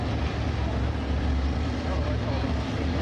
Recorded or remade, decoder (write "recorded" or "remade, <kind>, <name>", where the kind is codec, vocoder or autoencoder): recorded